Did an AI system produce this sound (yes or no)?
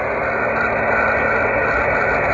no